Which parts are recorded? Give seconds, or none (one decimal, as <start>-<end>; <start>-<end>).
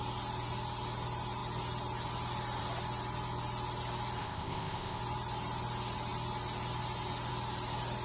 0.0-4.2; 5.0-8.0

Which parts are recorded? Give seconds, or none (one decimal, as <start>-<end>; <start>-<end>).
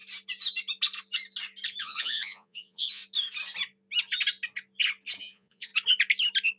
0.0-1.8; 3.0-5.2; 5.7-6.6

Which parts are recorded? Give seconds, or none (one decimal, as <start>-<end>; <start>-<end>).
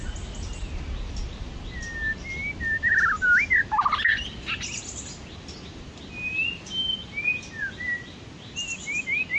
0.0-9.4